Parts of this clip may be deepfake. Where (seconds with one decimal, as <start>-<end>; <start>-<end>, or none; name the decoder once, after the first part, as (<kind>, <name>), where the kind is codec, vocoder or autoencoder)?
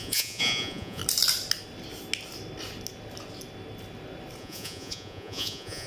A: 0.0-1.0 (vocoder, Vocos); 4.4-5.9